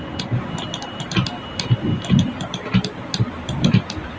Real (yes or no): yes